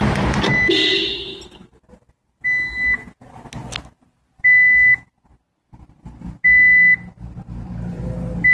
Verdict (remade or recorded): recorded